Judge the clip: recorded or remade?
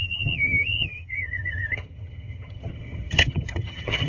remade